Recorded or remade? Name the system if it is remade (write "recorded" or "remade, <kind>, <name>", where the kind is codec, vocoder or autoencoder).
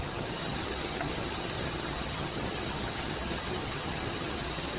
remade, vocoder, HiFi-GAN